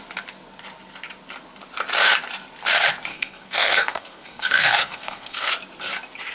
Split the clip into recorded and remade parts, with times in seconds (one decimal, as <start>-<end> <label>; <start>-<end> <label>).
0.0-3.1 recorded; 3.1-5.5 remade; 5.5-6.3 recorded